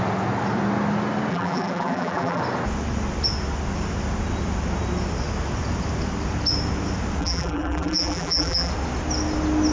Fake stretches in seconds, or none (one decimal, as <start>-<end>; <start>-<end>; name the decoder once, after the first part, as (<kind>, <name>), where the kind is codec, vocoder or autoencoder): 1.3-2.4 (vocoder, BigVGAN v2); 7.2-8.7